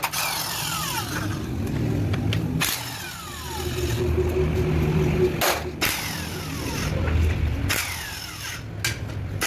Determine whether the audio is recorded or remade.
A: recorded